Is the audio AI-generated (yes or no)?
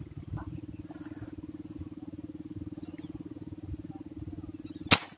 no